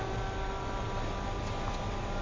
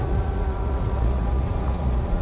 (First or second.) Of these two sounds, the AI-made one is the second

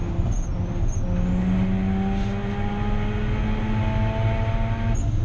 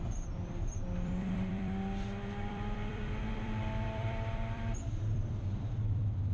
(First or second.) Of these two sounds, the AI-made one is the second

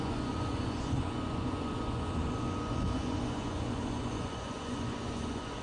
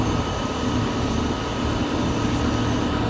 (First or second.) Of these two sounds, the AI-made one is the first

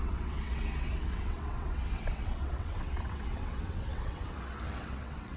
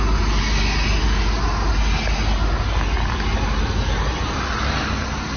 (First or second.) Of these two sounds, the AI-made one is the first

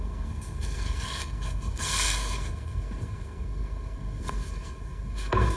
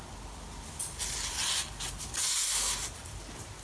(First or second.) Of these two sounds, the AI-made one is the first